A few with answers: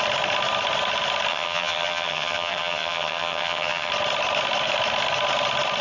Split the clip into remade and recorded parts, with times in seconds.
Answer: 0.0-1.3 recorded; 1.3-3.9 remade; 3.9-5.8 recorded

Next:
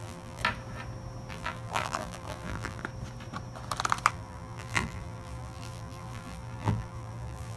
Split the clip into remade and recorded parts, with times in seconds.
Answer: 0.0-0.4 remade; 0.4-1.3 recorded; 1.3-2.8 remade; 2.8-4.1 recorded; 4.1-7.6 remade

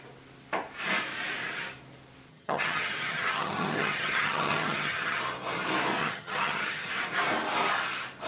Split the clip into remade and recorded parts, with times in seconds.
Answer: 0.0-2.3 recorded; 2.3-5.2 remade; 5.2-6.0 recorded; 6.0-6.9 remade; 6.9-8.3 recorded

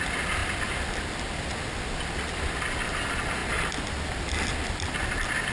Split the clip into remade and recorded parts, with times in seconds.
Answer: 0.0-5.5 recorded